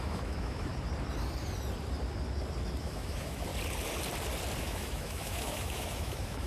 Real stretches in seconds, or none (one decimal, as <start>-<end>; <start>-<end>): 0.7-2.8; 3.5-4.6